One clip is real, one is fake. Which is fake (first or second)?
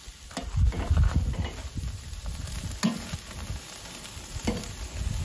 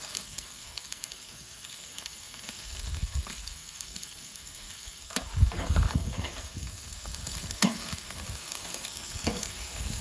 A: second